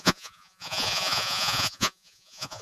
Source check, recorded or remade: remade